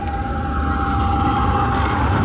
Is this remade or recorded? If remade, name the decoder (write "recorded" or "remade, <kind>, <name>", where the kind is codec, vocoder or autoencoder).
recorded